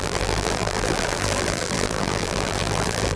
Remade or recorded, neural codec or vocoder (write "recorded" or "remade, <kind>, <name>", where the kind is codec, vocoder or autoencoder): remade, vocoder, BigVGAN v2